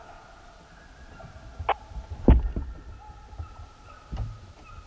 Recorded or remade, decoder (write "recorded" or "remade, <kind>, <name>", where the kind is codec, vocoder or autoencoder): recorded